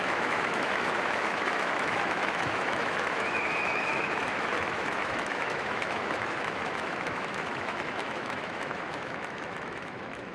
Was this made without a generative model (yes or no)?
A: no